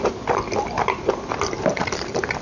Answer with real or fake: real